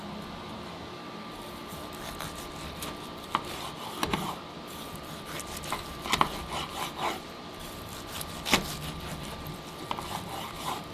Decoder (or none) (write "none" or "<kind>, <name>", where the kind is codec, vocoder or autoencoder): vocoder, BigVGAN v2